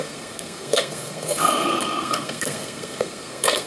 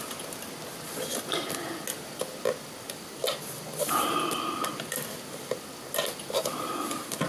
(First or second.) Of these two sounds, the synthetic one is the first